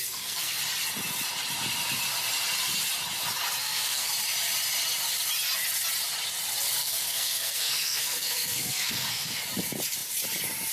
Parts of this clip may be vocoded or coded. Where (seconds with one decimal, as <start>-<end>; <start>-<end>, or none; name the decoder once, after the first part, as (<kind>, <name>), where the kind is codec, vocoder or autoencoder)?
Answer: 0.0-0.6 (codec, SNAC); 3.6-4.1; 6.8-9.4